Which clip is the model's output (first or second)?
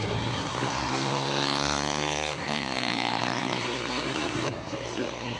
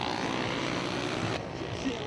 first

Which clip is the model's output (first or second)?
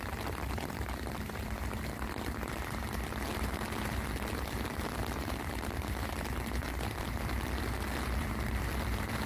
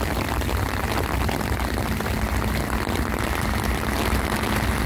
first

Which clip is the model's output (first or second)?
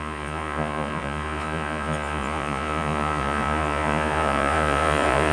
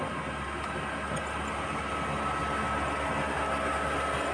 first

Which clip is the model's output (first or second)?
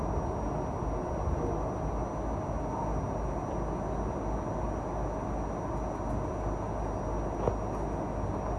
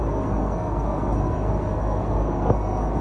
second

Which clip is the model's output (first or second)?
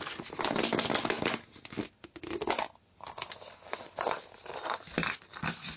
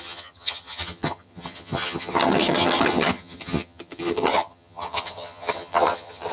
second